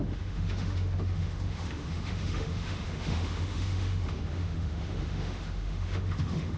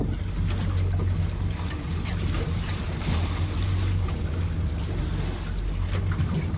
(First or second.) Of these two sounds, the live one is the second